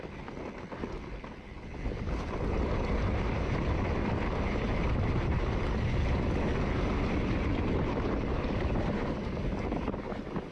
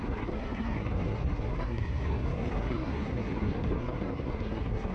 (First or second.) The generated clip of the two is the second